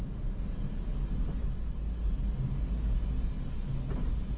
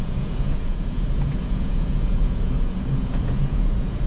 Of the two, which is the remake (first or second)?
second